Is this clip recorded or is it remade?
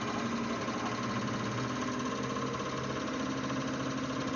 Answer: recorded